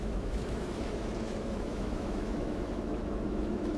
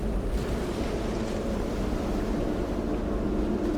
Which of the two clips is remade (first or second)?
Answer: first